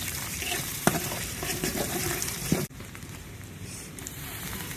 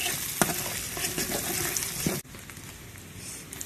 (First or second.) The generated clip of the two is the first